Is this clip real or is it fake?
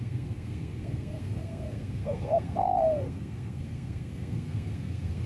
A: fake